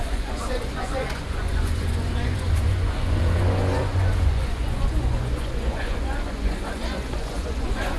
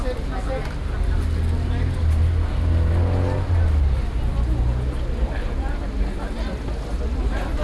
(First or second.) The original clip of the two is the second